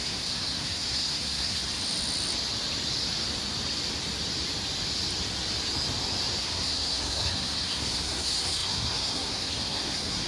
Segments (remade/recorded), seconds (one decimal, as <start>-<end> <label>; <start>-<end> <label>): 0.0-1.6 remade; 1.6-6.4 recorded; 6.4-10.3 remade